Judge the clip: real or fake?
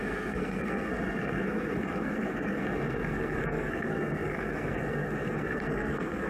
fake